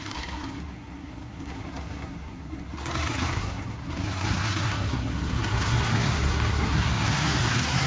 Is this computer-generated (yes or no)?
yes